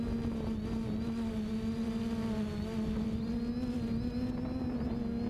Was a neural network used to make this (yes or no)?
no